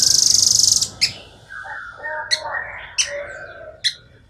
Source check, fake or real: real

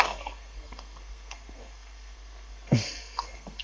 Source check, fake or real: fake